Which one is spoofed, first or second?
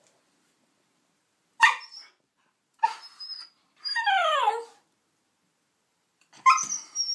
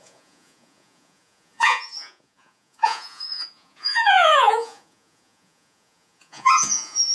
second